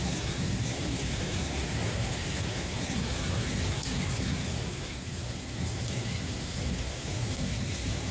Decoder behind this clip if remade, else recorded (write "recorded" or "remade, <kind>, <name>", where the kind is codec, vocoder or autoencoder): remade, codec, SNAC